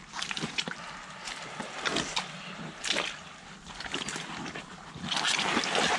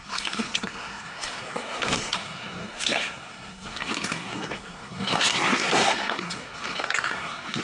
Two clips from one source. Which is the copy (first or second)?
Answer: second